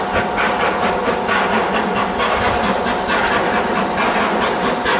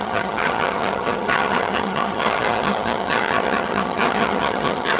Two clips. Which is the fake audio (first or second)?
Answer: second